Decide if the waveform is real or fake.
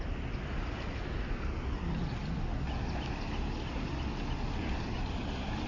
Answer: real